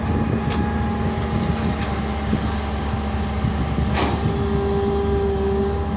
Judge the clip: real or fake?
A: real